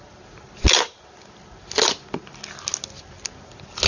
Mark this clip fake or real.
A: real